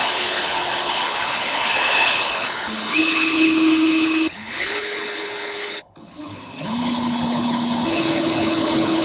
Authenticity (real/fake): fake